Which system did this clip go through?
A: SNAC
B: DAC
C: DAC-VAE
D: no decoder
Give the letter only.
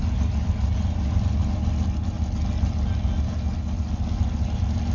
D